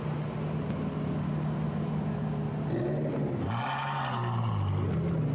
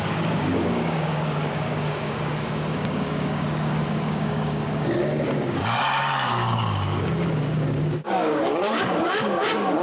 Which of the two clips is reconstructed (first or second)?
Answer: second